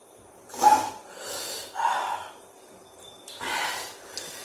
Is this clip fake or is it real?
real